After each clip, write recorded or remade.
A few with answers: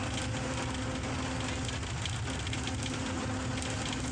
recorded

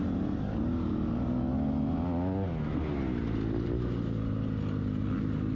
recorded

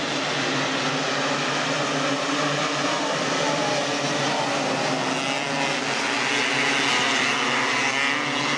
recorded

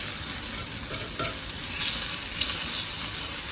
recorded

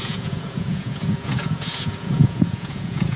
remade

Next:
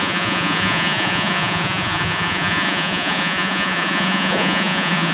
remade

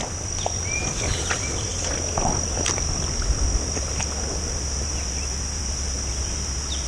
recorded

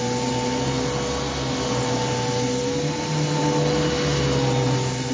recorded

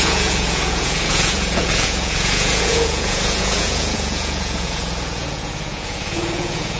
remade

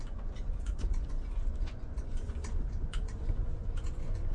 remade